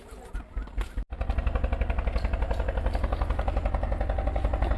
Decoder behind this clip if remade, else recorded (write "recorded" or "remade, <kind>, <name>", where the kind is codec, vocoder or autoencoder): recorded